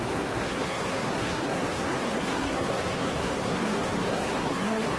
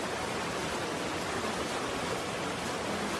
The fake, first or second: first